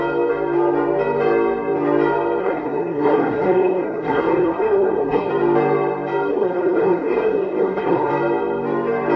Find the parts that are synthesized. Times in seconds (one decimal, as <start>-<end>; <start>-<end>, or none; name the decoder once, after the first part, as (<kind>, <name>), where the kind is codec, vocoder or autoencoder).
2.4-5.3 (codec, SNAC); 6.3-8.1